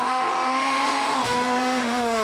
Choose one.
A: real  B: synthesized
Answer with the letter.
B